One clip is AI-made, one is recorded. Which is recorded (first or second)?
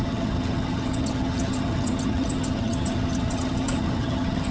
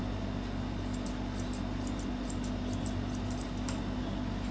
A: second